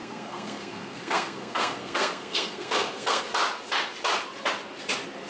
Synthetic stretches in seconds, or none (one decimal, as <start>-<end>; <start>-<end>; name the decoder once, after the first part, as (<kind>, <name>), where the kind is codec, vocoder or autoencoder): 0.0-3.2 (codec, SNAC)